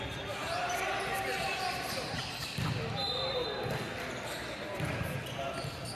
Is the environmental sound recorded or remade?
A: recorded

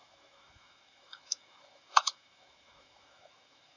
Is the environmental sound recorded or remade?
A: remade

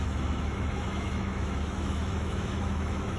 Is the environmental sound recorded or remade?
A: remade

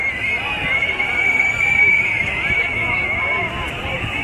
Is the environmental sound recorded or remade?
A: recorded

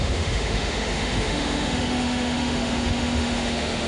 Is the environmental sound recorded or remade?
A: remade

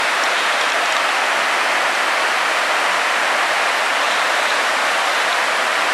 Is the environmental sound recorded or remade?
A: recorded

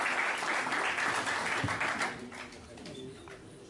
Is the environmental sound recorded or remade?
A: recorded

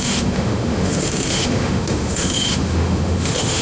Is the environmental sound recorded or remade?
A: remade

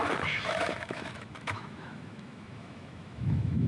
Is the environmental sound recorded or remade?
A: remade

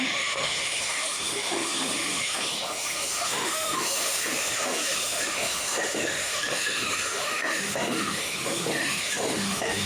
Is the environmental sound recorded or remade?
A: remade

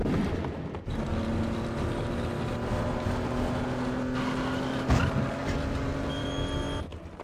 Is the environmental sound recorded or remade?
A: recorded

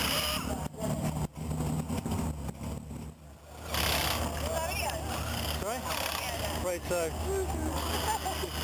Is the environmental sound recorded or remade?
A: recorded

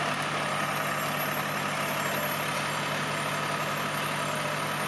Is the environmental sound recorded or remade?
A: recorded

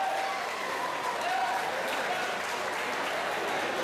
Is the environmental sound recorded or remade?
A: recorded